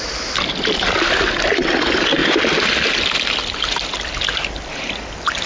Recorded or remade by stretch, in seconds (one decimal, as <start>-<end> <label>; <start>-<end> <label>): 0.0-5.5 recorded